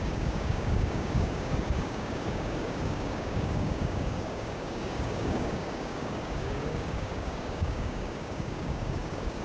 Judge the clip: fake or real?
fake